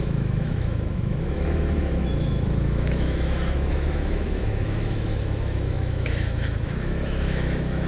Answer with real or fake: fake